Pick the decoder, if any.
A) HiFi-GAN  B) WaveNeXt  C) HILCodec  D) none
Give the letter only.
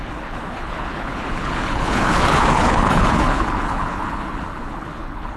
C